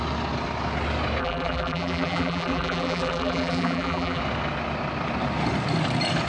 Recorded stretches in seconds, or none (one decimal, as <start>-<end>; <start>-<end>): 0.0-1.2; 4.2-6.3